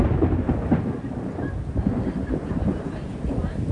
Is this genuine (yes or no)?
yes